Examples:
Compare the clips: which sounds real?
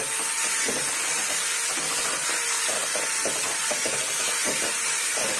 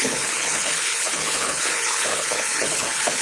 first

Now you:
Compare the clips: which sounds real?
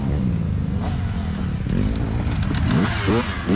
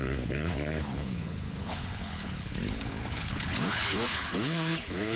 first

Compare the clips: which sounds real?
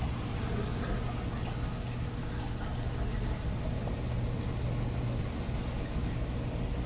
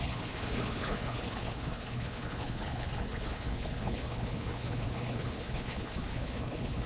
first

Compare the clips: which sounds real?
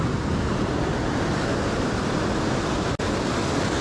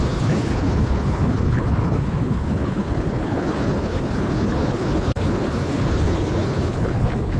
first